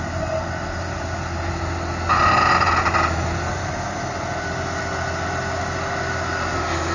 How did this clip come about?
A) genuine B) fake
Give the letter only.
A